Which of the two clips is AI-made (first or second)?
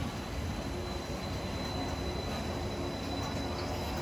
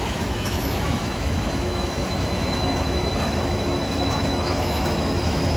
second